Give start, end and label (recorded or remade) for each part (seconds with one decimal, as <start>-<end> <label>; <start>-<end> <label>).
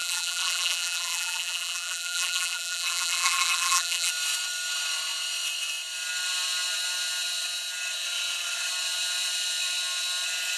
0.0-4.1 remade; 4.1-10.6 recorded